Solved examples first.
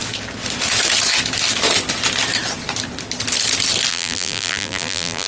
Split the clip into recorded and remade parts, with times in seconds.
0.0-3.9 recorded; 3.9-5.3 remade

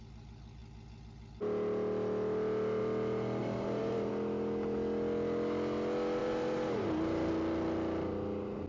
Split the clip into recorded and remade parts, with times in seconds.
0.0-3.4 recorded; 3.4-4.1 remade; 4.1-6.2 recorded; 6.2-7.3 remade; 7.3-8.7 recorded

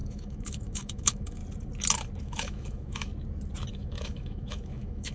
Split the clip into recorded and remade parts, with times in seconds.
0.0-1.4 remade; 1.4-2.2 recorded; 2.2-3.1 remade; 3.1-3.7 recorded; 3.7-5.1 remade

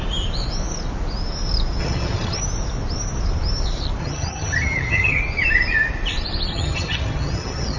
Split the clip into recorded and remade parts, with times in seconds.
0.0-1.8 recorded; 1.8-2.4 remade; 2.4-4.0 recorded; 4.0-5.2 remade; 5.2-6.5 recorded; 6.5-7.8 remade

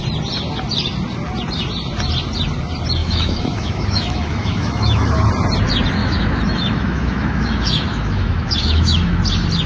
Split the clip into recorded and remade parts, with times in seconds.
0.0-3.0 recorded; 3.0-5.3 remade; 5.3-6.0 recorded; 6.0-9.2 remade; 9.2-9.7 recorded

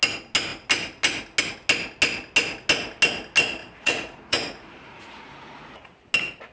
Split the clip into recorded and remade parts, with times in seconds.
0.0-3.6 recorded; 3.6-5.9 remade; 5.9-6.5 recorded

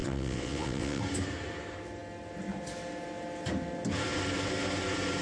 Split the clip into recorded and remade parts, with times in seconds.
0.0-1.0 remade; 1.0-5.2 recorded